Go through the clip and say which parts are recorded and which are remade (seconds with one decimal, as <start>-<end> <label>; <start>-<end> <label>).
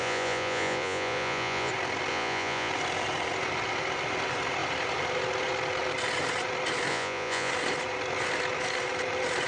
0.0-1.7 remade; 1.7-2.1 recorded; 2.1-2.7 remade; 2.7-6.9 recorded; 6.9-7.5 remade; 7.5-9.5 recorded